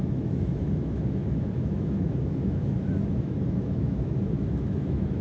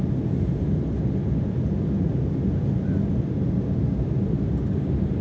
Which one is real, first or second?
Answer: second